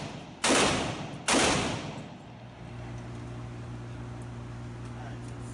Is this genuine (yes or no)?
yes